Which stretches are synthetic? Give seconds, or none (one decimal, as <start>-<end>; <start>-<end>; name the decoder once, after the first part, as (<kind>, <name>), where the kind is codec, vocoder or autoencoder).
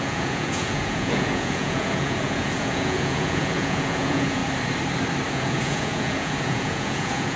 0.0-4.4 (vocoder, Vocos); 5.3-7.4